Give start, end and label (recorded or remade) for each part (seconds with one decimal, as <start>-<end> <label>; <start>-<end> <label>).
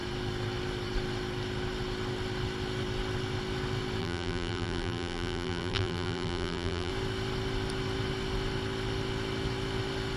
0.0-4.0 recorded; 4.0-6.9 remade; 6.9-10.2 recorded